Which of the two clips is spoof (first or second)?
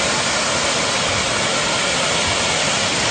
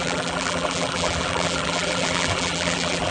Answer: second